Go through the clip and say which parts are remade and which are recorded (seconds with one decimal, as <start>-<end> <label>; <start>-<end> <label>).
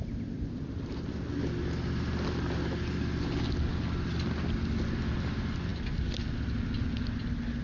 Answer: 0.0-7.6 recorded